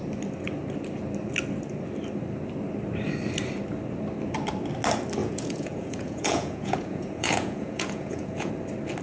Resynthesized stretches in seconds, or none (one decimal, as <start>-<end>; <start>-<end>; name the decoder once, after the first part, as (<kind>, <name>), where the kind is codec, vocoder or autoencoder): 5.2-8.5 (vocoder, Vocos)